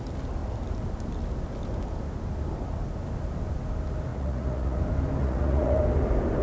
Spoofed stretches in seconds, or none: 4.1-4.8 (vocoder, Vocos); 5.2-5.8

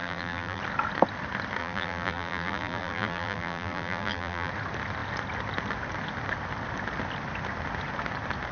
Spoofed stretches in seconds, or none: 0.0-0.6 (vocoder, BigVGAN v2); 1.6-4.5